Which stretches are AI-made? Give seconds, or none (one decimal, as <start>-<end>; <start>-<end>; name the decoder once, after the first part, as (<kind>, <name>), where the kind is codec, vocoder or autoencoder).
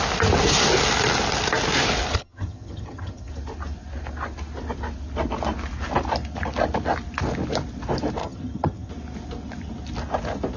2.1-3.3 (vocoder, HiFi-GAN); 8.2-8.9